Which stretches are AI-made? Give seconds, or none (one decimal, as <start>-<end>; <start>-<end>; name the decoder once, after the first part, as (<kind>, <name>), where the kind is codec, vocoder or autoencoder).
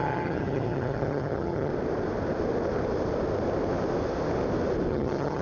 0.0-1.7 (vocoder, HiFi-GAN); 4.9-5.4